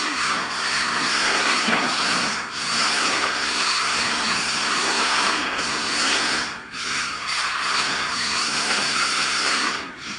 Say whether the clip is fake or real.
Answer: fake